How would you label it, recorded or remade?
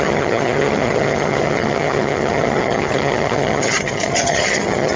remade